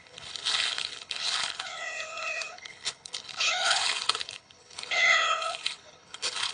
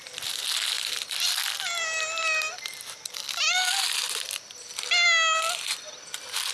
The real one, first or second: second